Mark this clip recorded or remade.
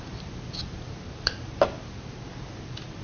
recorded